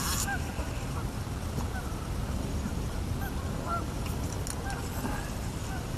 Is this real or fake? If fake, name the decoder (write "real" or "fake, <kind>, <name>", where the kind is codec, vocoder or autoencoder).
real